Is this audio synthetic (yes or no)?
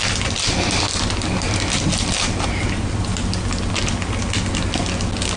no